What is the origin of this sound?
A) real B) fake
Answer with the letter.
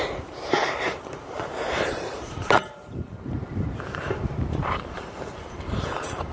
B